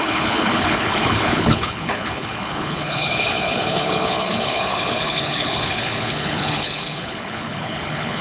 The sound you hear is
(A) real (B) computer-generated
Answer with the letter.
B